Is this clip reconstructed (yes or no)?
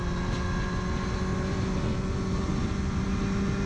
no